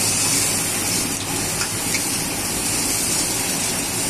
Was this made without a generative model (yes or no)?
yes